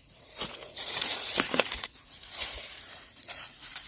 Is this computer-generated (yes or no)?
yes